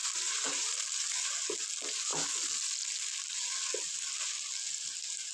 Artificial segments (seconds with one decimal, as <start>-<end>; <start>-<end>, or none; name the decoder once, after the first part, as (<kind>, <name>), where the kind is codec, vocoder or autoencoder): 0.0-1.2 (vocoder, BigVGAN v2)